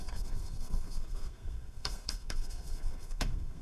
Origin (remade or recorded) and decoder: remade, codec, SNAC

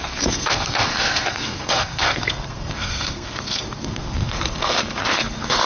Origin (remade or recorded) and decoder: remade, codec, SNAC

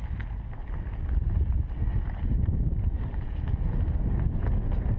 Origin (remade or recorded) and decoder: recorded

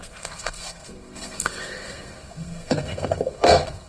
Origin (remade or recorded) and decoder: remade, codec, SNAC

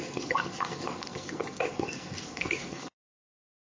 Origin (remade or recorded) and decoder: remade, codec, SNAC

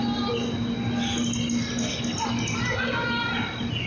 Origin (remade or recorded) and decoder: recorded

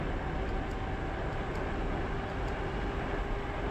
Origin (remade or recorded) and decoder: recorded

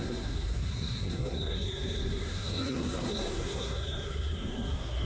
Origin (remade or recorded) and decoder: remade, codec, SNAC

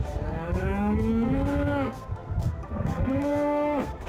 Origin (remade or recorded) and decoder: remade, codec, SNAC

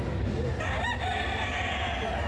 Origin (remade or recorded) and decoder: recorded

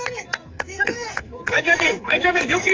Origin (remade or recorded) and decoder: remade, codec, SNAC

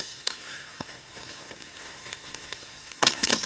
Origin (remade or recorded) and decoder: remade, codec, SNAC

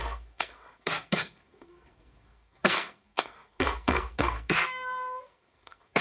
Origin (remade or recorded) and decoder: remade, codec, SNAC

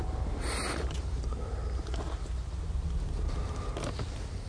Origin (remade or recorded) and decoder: recorded